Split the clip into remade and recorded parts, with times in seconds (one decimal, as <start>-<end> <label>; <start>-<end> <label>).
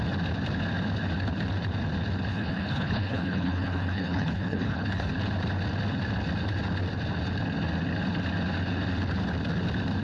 0.0-2.3 recorded; 2.3-5.1 remade; 5.1-10.0 recorded